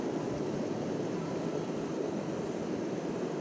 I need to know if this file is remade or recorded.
recorded